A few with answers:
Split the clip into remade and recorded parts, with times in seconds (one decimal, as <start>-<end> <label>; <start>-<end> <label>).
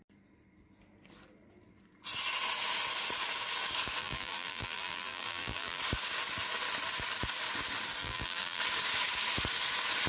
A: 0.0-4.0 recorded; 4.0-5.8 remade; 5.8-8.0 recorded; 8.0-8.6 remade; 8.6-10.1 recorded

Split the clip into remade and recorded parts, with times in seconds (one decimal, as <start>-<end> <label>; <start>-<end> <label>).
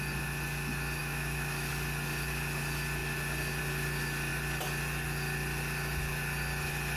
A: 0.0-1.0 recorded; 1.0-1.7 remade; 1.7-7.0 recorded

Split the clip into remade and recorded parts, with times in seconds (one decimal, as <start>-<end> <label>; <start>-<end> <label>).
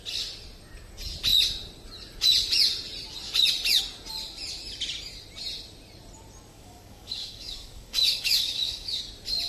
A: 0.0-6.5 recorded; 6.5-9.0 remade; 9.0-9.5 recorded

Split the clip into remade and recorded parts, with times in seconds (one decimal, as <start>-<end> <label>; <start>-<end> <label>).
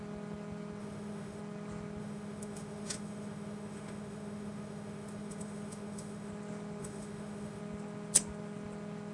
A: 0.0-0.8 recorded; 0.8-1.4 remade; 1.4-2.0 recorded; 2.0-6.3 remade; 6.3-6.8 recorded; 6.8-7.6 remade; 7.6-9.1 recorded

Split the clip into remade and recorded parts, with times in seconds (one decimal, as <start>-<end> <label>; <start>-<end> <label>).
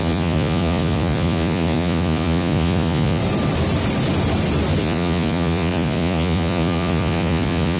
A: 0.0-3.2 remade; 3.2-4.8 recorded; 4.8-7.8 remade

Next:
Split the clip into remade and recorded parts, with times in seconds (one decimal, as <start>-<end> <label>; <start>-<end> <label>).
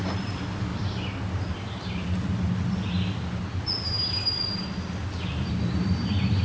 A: 0.0-6.4 recorded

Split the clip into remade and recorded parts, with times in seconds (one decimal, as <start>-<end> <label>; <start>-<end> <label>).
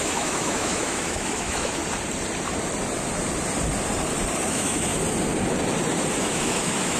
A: 0.0-1.8 remade; 1.8-4.5 recorded; 4.5-4.9 remade; 4.9-6.2 recorded; 6.2-7.0 remade